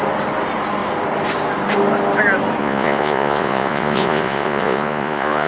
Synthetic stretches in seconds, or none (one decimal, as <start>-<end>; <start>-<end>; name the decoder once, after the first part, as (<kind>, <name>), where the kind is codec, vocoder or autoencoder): 2.6-5.5 (vocoder, Vocos)